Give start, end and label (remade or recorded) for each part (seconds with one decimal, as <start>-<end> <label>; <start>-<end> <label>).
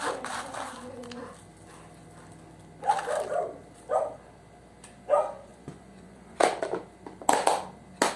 0.0-5.5 recorded; 5.5-6.6 remade; 6.6-8.2 recorded